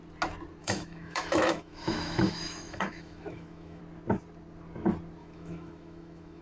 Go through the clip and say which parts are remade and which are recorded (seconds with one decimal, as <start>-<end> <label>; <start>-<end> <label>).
0.0-0.6 recorded; 0.6-3.8 remade; 3.8-5.2 recorded; 5.2-6.4 remade